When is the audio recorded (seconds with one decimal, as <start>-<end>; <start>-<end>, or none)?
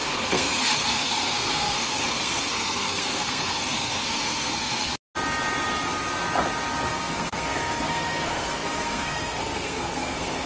4.9-6.9